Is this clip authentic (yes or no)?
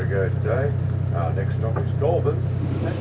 yes